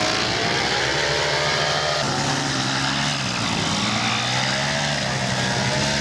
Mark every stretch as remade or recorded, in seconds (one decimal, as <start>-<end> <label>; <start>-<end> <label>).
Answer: 0.0-6.0 recorded